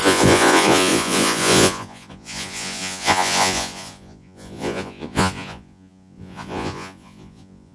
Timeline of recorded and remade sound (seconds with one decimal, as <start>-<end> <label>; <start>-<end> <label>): 0.0-7.7 remade